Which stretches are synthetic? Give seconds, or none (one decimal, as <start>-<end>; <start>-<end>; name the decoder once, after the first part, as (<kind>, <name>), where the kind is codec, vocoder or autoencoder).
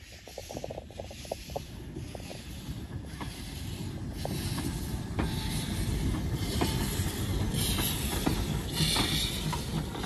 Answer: 0.4-1.6 (vocoder, BigVGAN v2)